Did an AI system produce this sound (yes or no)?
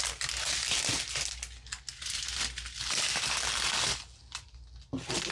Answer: no